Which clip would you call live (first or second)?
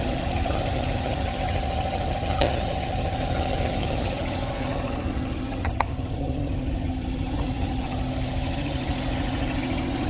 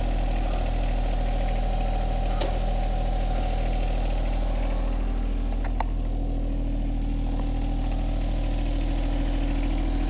second